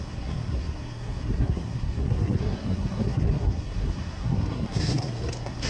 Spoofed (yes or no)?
yes